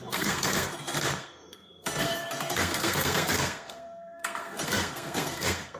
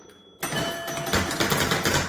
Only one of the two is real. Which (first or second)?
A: second